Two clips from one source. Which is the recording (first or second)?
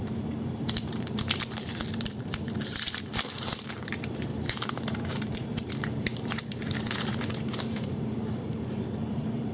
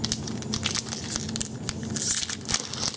second